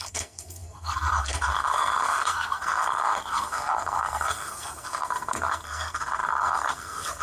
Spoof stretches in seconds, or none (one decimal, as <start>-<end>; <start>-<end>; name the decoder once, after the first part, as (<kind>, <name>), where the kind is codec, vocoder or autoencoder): 0.0-7.2 (codec, SNAC)